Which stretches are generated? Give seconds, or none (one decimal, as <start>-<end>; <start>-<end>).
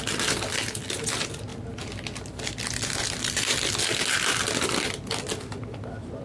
none